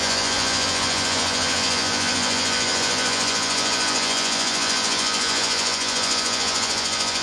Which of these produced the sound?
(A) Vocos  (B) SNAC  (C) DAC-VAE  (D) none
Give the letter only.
A